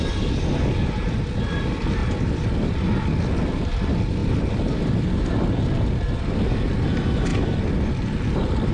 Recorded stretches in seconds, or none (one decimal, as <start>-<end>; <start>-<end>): 0.0-4.2; 5.4-7.3